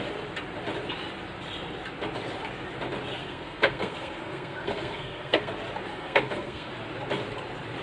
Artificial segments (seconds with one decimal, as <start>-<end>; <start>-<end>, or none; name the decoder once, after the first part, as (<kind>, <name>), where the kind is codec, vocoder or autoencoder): 3.2-5.5 (codec, SNAC); 5.9-6.7